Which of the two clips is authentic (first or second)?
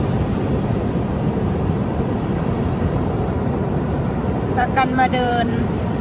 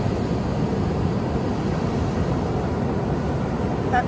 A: second